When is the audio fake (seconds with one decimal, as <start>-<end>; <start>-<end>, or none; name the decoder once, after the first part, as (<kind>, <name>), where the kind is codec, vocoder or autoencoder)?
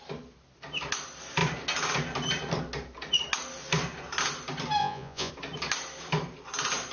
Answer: 4.8-5.3 (vocoder, Vocos)